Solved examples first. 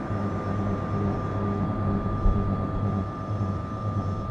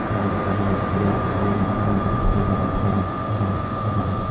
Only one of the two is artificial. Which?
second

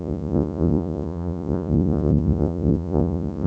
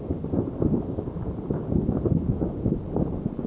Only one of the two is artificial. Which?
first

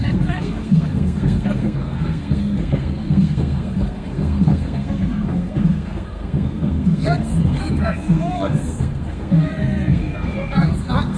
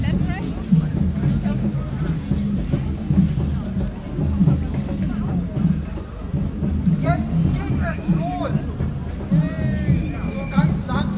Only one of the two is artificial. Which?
first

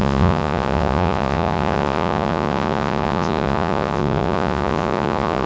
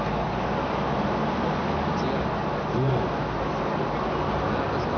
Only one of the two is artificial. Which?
first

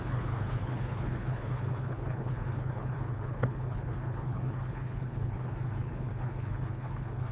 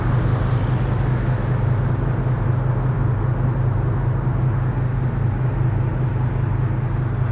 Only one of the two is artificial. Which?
first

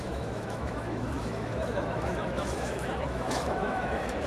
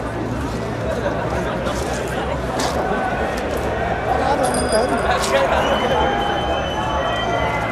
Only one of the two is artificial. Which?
first